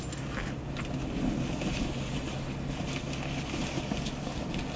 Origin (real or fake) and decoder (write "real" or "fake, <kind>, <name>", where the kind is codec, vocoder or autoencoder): real